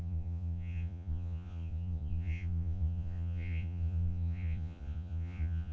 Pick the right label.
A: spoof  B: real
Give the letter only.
A